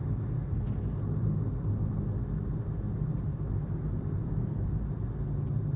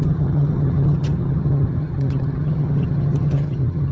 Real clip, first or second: first